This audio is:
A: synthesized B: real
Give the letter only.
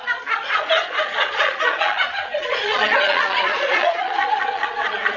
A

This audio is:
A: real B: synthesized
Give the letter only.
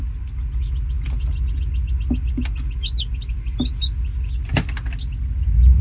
A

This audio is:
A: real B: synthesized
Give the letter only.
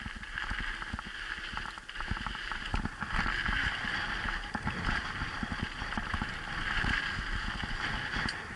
A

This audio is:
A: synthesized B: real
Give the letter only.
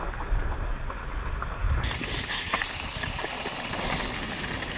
B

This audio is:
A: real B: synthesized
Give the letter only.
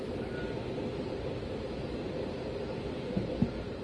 A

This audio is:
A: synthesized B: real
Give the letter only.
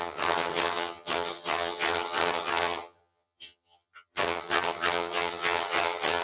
A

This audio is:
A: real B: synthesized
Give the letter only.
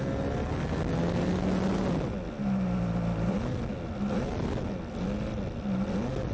A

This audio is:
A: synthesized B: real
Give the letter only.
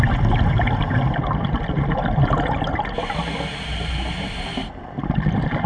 B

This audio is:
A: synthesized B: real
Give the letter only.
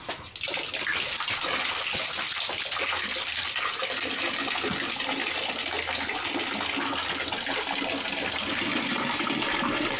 B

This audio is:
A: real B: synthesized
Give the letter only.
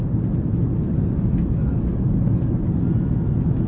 A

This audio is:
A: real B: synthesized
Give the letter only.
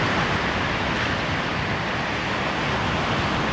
A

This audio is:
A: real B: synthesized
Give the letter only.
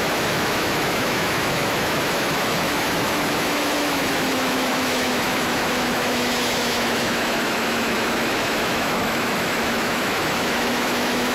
B